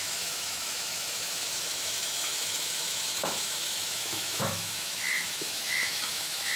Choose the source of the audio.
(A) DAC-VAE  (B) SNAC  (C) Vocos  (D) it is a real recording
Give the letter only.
A